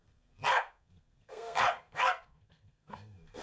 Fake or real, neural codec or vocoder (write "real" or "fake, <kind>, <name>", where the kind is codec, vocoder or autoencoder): fake, codec, SNAC